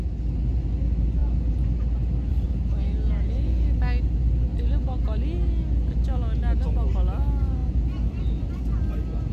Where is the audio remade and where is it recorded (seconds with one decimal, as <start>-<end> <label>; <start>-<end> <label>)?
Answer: 0.0-9.3 recorded